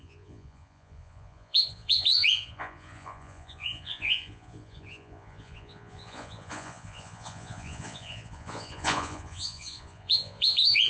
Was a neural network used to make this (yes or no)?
yes